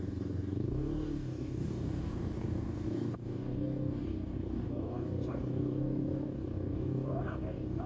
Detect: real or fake fake